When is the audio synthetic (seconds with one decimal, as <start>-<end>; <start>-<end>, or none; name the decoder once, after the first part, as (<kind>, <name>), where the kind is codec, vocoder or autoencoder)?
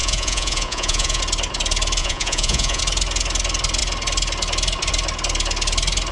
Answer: 0.0-1.2 (vocoder, Vocos); 2.0-2.8